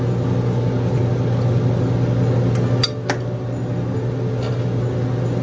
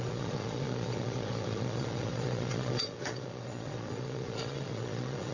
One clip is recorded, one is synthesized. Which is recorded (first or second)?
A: first